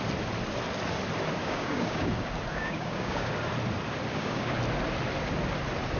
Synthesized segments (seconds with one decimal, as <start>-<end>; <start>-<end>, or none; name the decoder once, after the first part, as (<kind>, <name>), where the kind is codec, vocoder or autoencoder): 1.4-2.1 (codec, DAC); 2.5-3.3; 4.1-4.6